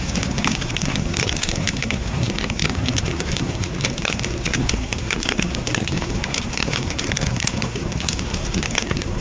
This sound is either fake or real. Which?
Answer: fake